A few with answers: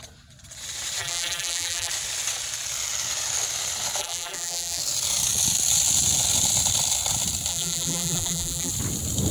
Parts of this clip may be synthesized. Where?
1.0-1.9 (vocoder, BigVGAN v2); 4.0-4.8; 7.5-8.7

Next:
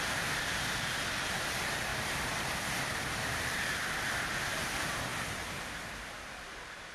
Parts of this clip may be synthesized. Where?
1.9-4.1 (vocoder, BigVGAN v2)

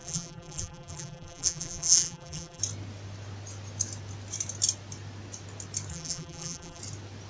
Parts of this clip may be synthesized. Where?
0.0-2.6 (vocoder, BigVGAN v2); 5.9-6.8